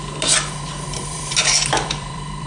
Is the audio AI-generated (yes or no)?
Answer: yes